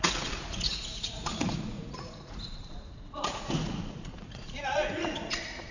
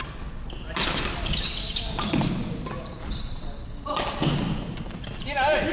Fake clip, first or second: first